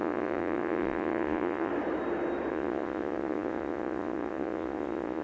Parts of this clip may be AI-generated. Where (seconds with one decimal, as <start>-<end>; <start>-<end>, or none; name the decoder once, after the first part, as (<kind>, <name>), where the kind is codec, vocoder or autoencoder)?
0.0-1.7 (vocoder, Vocos); 2.5-5.2